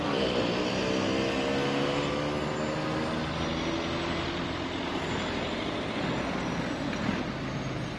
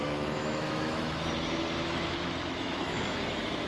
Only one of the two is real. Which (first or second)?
first